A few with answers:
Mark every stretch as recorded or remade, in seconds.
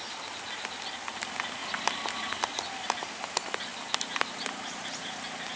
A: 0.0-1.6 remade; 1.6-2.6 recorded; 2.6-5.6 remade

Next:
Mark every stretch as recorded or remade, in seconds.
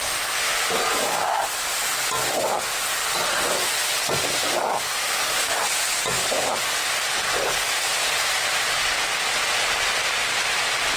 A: 0.0-11.0 recorded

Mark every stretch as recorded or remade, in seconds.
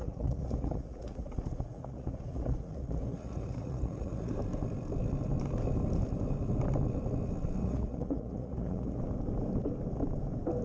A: 0.0-4.3 remade; 4.3-7.6 recorded; 7.6-9.0 remade; 9.0-10.6 recorded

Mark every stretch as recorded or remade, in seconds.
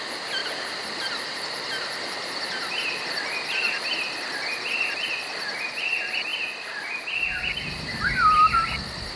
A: 0.0-0.4 recorded; 0.4-3.0 remade; 3.0-9.2 recorded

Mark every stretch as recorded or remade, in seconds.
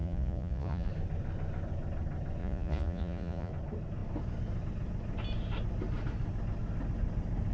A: 0.0-0.9 remade; 0.9-2.4 recorded; 2.4-3.5 remade; 3.5-7.5 recorded